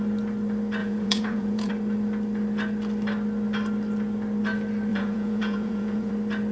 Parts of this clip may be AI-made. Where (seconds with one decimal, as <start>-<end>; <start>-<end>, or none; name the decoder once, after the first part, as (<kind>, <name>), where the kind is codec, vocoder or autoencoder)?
0.8-1.7 (vocoder, Vocos); 4.9-6.1